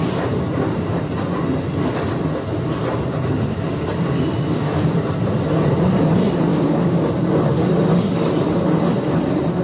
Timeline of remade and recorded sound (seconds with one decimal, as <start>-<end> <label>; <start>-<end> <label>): 0.0-6.5 recorded; 6.5-7.1 remade; 7.1-9.6 recorded